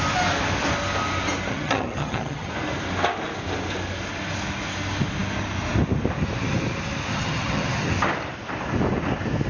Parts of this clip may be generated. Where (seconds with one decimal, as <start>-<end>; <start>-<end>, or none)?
1.5-2.5; 7.1-7.9